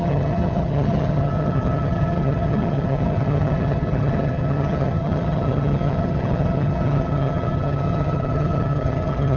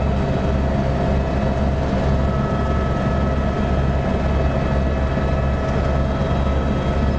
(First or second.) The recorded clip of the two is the second